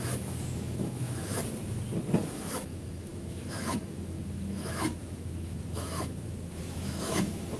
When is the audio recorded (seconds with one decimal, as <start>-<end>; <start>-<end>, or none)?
1.4-2.3

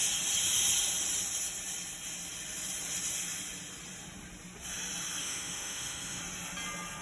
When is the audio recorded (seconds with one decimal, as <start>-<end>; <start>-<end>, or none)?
0.0-5.2; 6.2-7.0

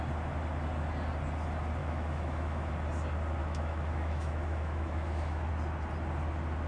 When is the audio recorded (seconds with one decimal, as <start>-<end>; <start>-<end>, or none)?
0.0-1.8; 2.7-3.4; 5.5-6.7